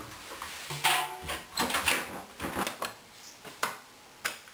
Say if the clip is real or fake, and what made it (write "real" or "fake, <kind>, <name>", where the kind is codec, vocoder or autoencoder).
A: real